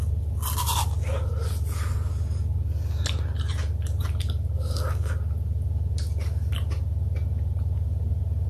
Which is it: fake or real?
real